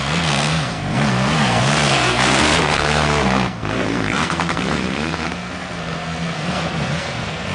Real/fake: fake